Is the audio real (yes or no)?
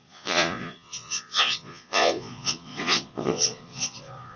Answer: no